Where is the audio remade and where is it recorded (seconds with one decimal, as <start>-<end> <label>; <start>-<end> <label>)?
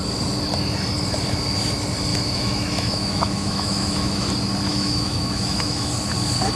0.0-2.1 recorded; 2.1-4.3 remade; 4.3-4.7 recorded; 4.7-5.9 remade; 5.9-6.6 recorded